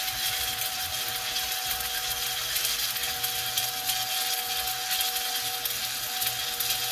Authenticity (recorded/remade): recorded